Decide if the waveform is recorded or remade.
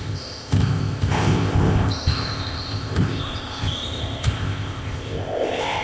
remade